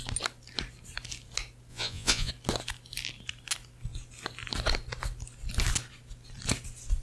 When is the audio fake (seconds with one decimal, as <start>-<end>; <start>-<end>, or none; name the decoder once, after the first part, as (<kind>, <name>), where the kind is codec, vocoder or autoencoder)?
1.7-2.3 (vocoder, Vocos)